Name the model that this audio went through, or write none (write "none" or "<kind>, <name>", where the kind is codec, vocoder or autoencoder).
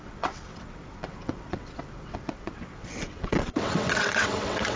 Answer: vocoder, WaveNeXt